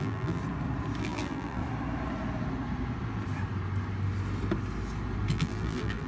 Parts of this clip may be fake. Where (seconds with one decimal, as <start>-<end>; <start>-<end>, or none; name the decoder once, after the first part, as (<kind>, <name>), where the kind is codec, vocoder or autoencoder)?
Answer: 0.0-0.4 (vocoder, BigVGAN v2); 1.0-1.6; 5.3-6.1